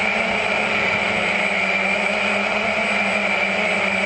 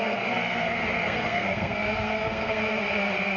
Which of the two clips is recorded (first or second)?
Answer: first